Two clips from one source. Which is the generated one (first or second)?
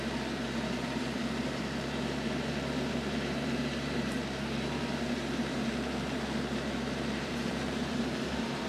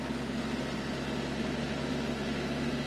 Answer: first